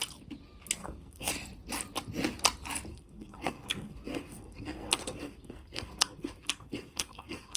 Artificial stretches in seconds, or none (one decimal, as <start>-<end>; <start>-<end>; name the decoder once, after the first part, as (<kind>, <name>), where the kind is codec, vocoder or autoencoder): 0.8-1.3 (codec, SNAC); 2.9-7.6